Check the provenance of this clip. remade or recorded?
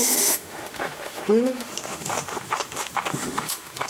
remade